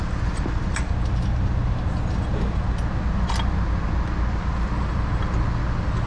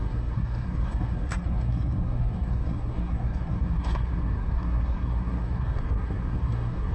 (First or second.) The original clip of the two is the first